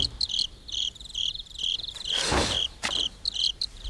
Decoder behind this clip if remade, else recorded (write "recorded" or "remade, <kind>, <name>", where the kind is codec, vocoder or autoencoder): remade, vocoder, BigVGAN v2